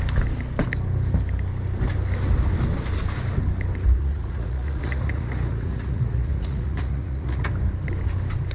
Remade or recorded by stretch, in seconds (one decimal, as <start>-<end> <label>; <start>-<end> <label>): 0.0-4.0 recorded; 4.0-7.5 remade; 7.5-8.5 recorded